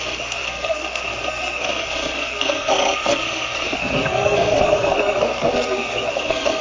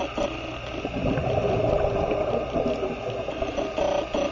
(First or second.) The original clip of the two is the second